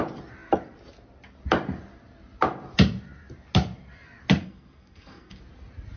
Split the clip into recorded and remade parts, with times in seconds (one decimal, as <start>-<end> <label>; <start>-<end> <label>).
0.0-4.4 recorded; 4.4-5.4 remade; 5.4-6.0 recorded